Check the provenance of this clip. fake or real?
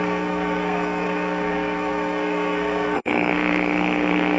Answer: fake